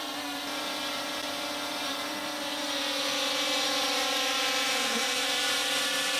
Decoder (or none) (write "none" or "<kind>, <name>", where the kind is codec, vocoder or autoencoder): vocoder, BigVGAN v2